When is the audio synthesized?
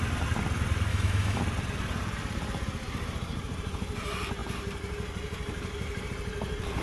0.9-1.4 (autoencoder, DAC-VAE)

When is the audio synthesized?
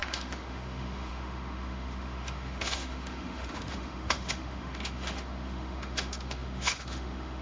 0.0-7.4 (autoencoder, DAC-VAE)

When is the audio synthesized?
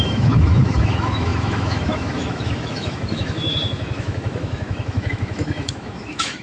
0.0-6.4 (autoencoder, DAC-VAE)